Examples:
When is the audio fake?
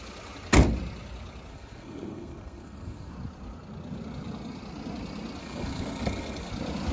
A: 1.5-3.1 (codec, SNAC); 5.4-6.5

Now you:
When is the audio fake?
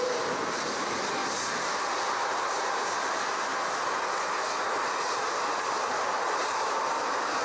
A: 0.0-1.2 (vocoder, BigVGAN v2); 2.1-3.5; 6.2-7.4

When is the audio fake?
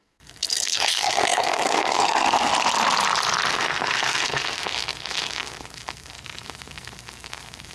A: 0.0-2.5 (codec, SNAC); 3.5-7.7